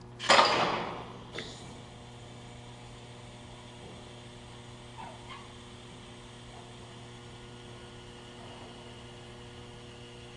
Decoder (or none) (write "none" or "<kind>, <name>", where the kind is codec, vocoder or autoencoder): none